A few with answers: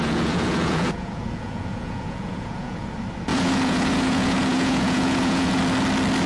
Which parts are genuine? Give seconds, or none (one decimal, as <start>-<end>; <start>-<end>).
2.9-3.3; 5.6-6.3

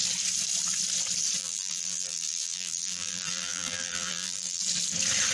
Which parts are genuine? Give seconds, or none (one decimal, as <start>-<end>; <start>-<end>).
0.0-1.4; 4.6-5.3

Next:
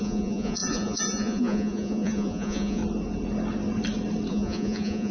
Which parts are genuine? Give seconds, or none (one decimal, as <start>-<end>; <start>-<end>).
2.8-4.3

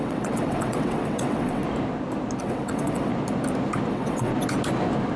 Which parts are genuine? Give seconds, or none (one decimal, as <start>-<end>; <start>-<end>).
1.6-2.4; 3.1-3.9; 4.3-5.2